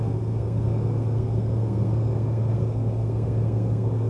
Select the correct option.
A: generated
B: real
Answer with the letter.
A